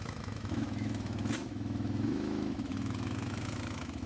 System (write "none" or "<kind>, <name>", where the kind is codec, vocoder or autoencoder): autoencoder, DAC-VAE